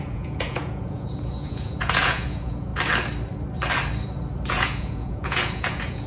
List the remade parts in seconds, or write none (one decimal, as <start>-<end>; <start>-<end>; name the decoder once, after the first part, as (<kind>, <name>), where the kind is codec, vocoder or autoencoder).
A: 0.0-2.7 (vocoder, Vocos); 4.5-6.1